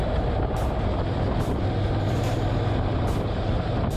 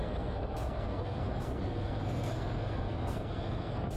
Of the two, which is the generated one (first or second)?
second